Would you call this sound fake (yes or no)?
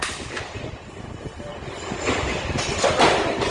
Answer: no